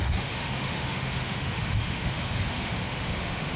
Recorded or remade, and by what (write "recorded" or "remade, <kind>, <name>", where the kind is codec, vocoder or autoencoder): remade, autoencoder, DAC-VAE